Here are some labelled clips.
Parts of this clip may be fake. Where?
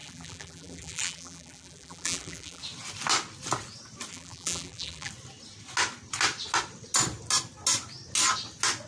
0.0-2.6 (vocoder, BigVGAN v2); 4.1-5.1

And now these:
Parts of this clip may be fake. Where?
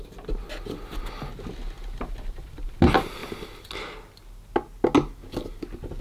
none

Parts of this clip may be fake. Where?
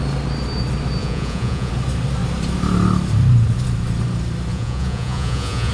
1.0-1.7 (vocoder, Vocos); 4.5-5.7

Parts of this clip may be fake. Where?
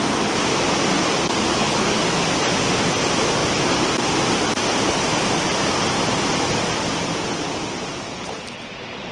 1.5-2.0 (codec, HILCodec)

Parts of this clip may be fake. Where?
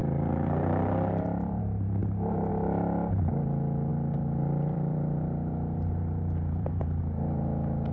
0.0-1.6 (vocoder, BigVGAN v2); 3.9-7.0